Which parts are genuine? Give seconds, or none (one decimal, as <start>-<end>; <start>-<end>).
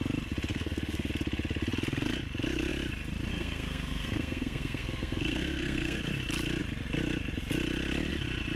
0.0-0.5; 1.1-3.3; 6.0-8.6